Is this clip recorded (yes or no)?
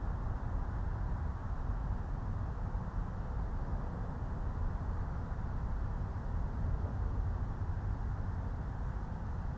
yes